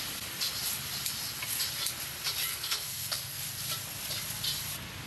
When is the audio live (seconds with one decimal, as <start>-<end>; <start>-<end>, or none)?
0.0-2.5; 3.4-5.1